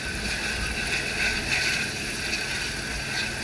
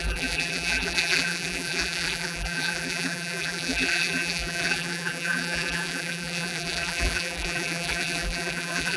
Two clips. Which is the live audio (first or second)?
first